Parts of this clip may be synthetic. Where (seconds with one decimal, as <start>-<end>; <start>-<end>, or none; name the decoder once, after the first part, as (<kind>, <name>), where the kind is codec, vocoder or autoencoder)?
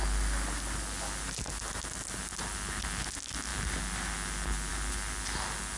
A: none